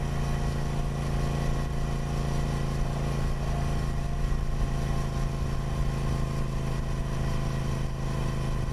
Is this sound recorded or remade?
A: recorded